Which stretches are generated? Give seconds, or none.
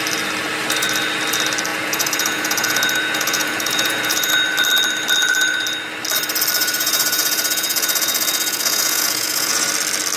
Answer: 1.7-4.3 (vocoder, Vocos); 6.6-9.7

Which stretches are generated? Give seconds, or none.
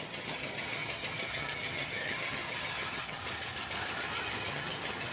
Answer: 0.0-3.2 (vocoder, HiFi-GAN); 4.5-5.1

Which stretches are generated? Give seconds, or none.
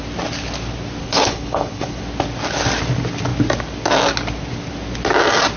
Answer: 1.0-2.0 (codec, HILCodec)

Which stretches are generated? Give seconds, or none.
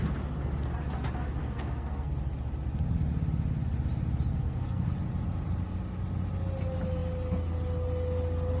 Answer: 1.4-2.1 (codec, SNAC); 4.3-4.9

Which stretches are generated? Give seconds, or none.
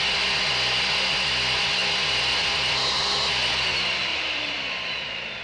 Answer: 4.1-5.4 (vocoder, BigVGAN v2)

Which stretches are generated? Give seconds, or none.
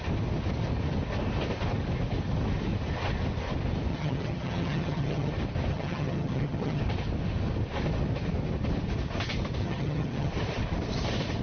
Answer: 3.9-5.3 (vocoder, HiFi-GAN); 5.7-6.8; 9.6-10.3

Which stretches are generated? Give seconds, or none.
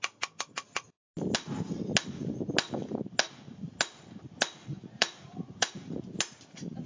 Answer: 4.6-6.2 (vocoder, Vocos)